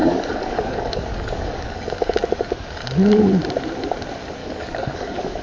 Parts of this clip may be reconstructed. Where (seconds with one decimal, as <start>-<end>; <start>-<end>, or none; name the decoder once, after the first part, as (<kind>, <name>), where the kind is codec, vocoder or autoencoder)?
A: 0.0-3.2 (codec, DAC); 4.4-5.4